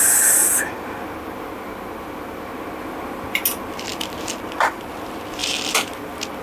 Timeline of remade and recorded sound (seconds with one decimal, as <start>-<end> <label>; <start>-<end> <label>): 0.0-0.4 remade; 0.4-2.8 recorded; 2.8-3.9 remade; 3.9-4.7 recorded; 4.7-5.4 remade; 5.4-6.4 recorded